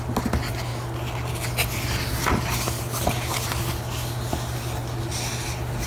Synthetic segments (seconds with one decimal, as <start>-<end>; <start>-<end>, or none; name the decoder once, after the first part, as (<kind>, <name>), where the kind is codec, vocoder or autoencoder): none